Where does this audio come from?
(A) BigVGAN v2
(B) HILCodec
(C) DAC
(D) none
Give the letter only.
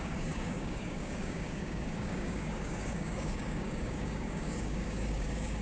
C